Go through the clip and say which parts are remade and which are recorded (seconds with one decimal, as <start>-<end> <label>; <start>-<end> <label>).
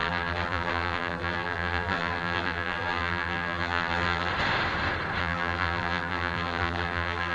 0.0-4.3 remade; 4.3-5.2 recorded; 5.2-7.3 remade